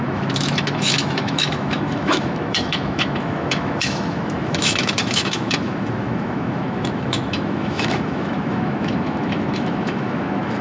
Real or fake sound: fake